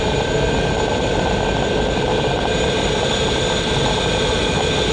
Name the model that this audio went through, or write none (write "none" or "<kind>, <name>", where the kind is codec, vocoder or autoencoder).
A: none